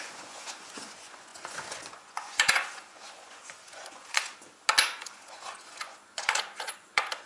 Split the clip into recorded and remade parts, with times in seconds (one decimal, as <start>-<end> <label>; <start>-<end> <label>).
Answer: 0.0-4.3 remade; 4.3-4.8 recorded; 4.8-7.3 remade